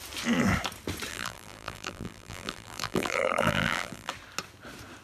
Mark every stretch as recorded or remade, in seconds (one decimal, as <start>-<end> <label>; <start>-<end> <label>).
0.0-1.1 recorded; 1.1-4.1 remade; 4.1-5.0 recorded